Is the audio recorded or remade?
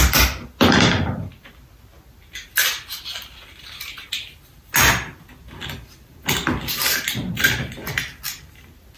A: recorded